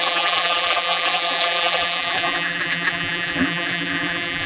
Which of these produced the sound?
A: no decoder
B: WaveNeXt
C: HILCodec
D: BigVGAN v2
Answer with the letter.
D